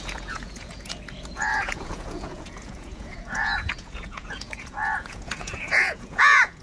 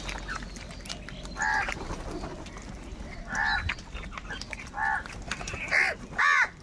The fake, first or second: first